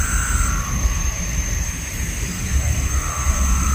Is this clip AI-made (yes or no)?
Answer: yes